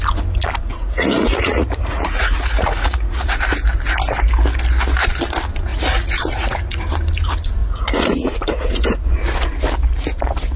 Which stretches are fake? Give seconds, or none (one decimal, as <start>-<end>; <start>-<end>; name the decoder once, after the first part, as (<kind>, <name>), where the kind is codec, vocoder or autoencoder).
0.7-3.4 (vocoder, Vocos); 5.7-6.8; 7.6-8.5